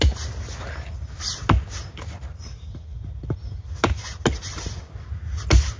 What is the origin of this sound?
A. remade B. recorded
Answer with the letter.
B